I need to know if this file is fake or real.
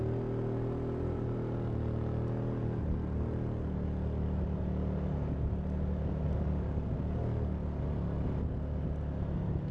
real